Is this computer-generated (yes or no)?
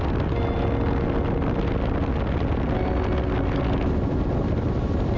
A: no